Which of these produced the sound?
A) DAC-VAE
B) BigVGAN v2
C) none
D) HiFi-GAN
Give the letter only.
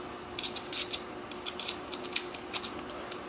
C